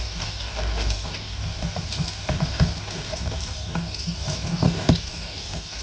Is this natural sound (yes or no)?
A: no